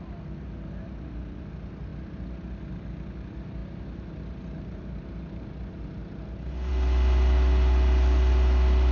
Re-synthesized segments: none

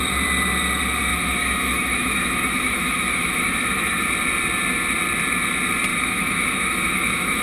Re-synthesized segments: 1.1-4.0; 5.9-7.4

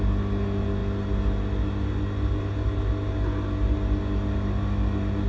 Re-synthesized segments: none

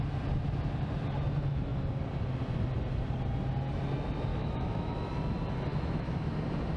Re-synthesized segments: 4.3-5.1; 5.7-6.3

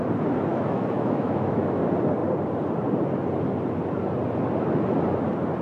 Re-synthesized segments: 0.5-1.8